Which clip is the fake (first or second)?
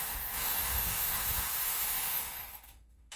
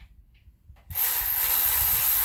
first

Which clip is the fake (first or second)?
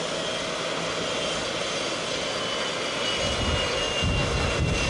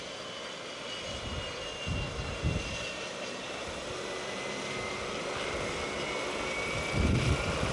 second